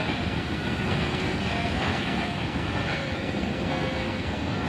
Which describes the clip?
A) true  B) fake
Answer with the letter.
B